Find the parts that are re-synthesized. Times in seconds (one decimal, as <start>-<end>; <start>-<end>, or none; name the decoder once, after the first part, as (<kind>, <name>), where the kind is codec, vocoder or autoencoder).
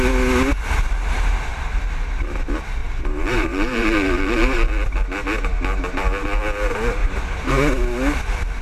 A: 2.8-4.7 (vocoder, BigVGAN v2); 7.0-7.5